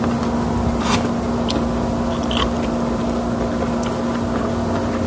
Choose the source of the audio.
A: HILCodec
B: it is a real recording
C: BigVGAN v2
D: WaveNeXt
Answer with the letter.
B